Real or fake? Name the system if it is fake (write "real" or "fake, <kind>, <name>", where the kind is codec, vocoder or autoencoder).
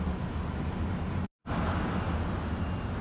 real